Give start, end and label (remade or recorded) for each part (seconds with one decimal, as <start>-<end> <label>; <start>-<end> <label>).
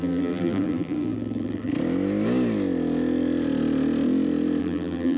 0.0-1.7 remade; 1.7-4.6 recorded; 4.6-5.2 remade